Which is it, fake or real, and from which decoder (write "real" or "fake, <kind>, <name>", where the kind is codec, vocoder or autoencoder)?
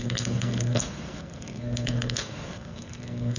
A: fake, codec, SNAC